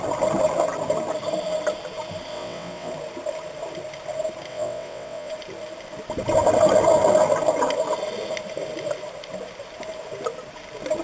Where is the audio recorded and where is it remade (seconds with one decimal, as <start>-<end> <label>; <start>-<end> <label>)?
0.0-2.3 recorded; 2.3-2.9 remade; 2.9-4.5 recorded; 4.5-5.3 remade; 5.3-11.0 recorded